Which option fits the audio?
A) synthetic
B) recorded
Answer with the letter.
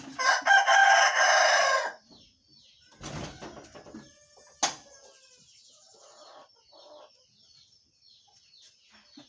B